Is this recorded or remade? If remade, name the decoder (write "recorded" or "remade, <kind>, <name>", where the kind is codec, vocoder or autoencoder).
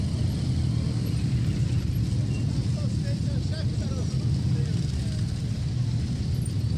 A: recorded